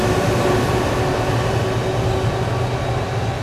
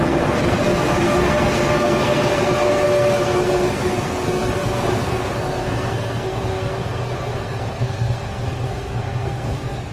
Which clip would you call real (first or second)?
first